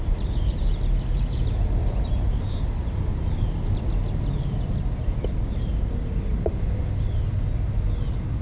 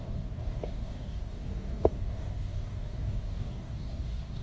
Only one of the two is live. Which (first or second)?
first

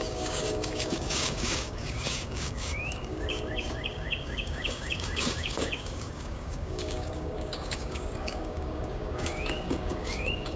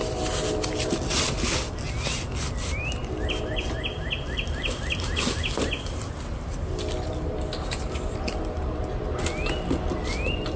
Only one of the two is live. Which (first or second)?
second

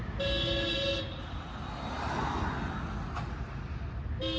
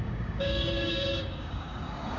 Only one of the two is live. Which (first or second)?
first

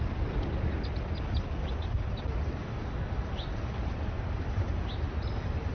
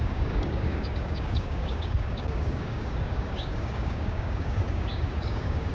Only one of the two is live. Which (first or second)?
first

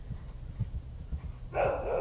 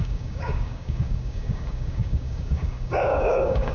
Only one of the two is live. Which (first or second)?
first